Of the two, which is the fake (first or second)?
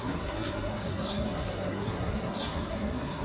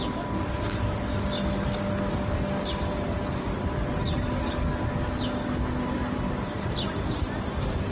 first